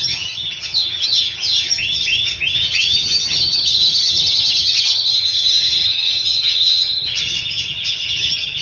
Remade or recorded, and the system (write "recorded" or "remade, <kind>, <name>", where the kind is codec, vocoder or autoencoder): remade, vocoder, HiFi-GAN